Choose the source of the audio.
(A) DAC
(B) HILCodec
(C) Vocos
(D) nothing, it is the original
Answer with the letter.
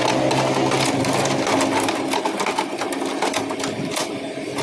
D